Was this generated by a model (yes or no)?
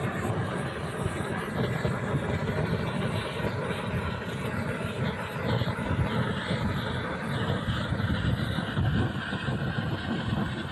no